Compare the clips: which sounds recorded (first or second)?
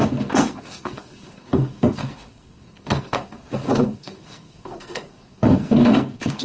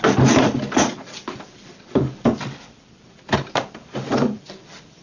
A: second